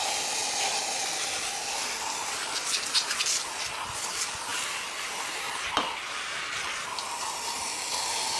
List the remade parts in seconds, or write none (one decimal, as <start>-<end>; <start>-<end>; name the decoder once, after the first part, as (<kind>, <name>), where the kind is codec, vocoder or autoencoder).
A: 0.0-0.4 (vocoder, BigVGAN v2); 4.0-4.5; 7.0-8.4

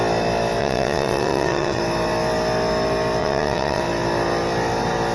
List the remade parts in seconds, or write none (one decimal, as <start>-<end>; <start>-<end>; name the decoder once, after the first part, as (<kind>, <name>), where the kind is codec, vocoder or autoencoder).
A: 0.6-1.8 (vocoder, WaveNeXt); 3.2-3.8

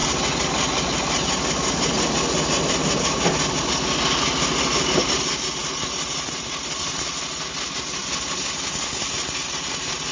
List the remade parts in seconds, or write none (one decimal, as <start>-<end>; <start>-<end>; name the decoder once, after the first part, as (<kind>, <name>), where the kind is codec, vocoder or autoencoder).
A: none

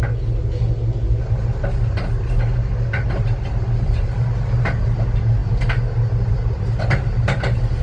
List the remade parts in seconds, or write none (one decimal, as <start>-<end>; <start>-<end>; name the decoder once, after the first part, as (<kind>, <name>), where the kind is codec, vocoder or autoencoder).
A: none

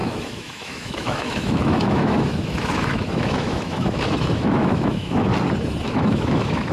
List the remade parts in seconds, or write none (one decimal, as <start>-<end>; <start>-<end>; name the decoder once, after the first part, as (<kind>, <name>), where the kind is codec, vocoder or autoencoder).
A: 0.0-5.3 (autoencoder, DAC-VAE); 5.8-6.7

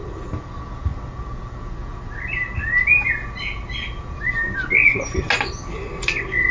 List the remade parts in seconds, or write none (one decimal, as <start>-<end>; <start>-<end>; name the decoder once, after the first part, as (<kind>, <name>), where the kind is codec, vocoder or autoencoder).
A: none

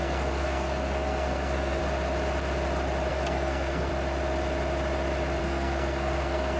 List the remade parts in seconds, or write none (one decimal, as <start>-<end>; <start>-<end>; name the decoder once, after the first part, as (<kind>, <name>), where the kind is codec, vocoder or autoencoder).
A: 0.0-1.8 (codec, SNAC); 3.1-3.9; 5.4-6.6